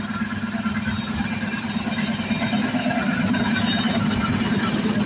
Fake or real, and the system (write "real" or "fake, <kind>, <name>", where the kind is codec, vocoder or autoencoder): real